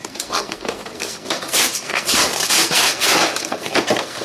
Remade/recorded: remade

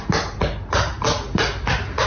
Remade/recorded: recorded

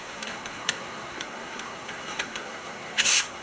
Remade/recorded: remade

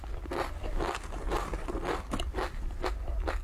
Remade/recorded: recorded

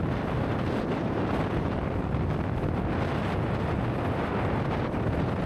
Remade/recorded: recorded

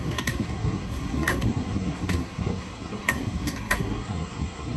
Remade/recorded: remade